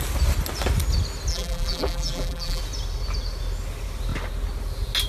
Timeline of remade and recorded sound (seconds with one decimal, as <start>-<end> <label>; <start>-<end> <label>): 0.0-1.3 recorded; 1.3-2.6 remade; 2.6-5.1 recorded